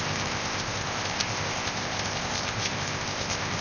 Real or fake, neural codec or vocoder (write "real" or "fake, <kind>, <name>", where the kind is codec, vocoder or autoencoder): fake, codec, ZipCodec